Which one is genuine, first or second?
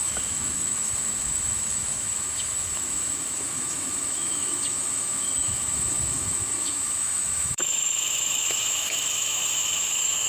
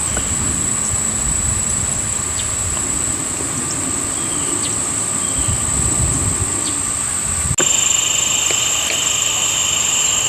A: second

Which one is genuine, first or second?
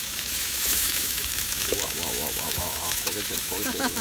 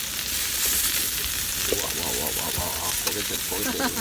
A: second